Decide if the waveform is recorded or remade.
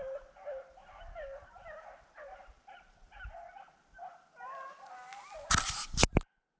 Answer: recorded